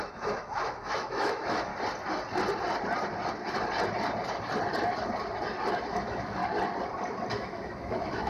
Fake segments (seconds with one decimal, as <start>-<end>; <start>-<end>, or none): 0.0-1.7; 5.7-6.4; 7.3-8.3